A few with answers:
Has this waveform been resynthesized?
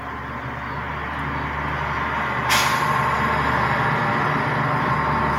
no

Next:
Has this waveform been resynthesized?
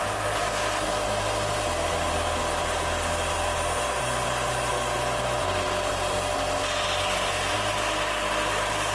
no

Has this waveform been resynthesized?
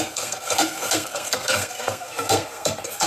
yes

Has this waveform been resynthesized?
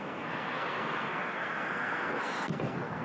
yes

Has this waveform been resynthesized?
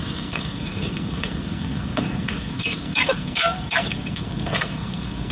yes